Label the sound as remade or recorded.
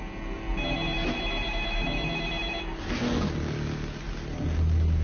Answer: recorded